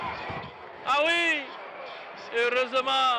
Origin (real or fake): real